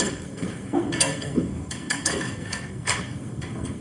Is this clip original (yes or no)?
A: no